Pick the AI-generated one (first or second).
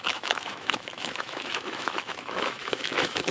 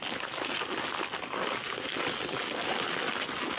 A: first